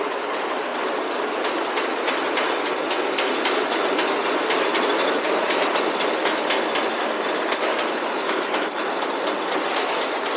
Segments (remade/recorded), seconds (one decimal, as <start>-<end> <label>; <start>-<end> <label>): 0.0-0.7 recorded; 0.7-2.7 remade; 2.7-7.7 recorded; 7.7-8.7 remade; 8.7-10.4 recorded